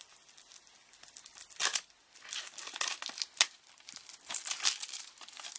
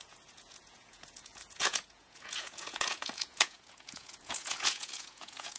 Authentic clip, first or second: first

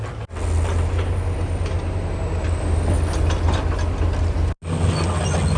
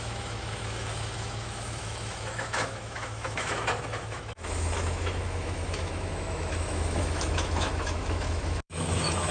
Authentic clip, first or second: first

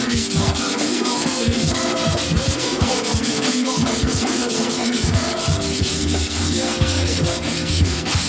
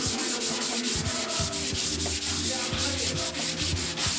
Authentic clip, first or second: second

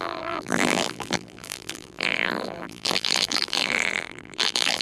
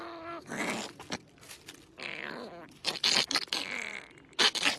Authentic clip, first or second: second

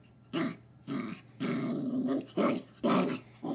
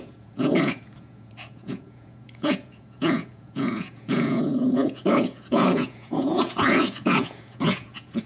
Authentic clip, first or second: first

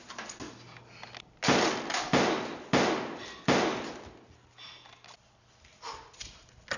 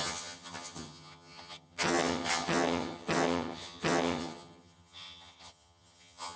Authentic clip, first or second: first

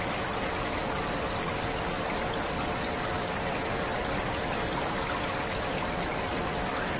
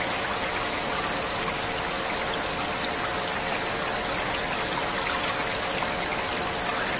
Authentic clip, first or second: second